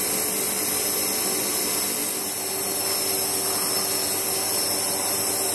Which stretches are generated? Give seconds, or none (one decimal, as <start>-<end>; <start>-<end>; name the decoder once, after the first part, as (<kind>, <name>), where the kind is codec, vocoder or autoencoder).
none